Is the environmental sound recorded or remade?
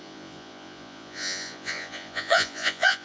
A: remade